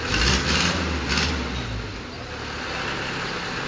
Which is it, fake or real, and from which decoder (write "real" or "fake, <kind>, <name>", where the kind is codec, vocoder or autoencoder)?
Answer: real